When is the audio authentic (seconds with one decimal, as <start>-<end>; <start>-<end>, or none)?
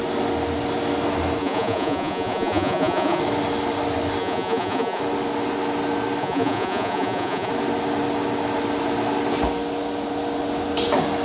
0.0-1.4; 3.2-4.2; 5.0-6.2; 7.5-11.2